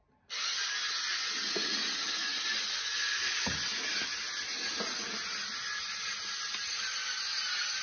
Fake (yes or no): no